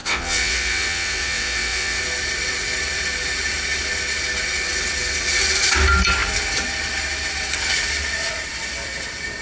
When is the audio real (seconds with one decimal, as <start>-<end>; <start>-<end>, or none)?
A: 2.0-9.4